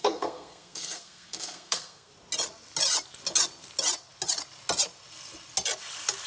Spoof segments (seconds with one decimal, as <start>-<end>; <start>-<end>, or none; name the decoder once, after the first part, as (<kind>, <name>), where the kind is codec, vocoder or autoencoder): 0.0-2.1 (codec, SNAC)